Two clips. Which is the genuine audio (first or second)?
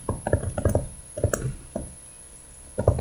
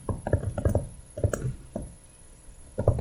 first